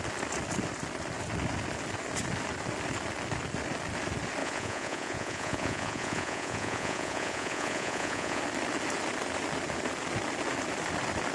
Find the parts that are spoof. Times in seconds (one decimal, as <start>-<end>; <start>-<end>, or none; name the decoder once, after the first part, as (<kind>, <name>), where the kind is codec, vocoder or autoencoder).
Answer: 4.4-8.4 (vocoder, Vocos)